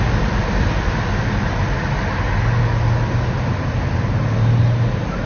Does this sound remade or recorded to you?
recorded